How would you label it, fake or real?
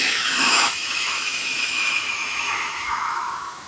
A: fake